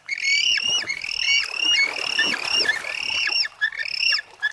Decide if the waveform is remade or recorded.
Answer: recorded